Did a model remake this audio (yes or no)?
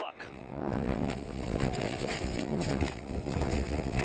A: yes